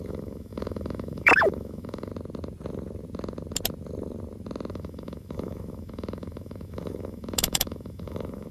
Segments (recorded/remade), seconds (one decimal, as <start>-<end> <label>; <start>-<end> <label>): 0.0-2.1 remade; 2.1-4.7 recorded; 4.7-8.5 remade